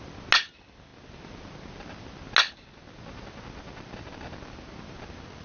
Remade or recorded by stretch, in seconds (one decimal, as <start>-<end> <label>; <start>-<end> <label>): 0.0-5.4 recorded